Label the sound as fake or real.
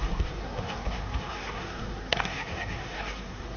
fake